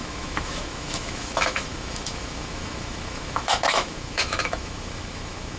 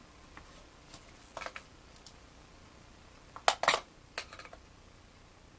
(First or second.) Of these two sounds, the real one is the second